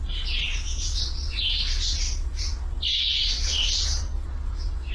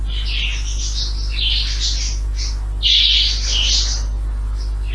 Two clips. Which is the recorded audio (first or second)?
second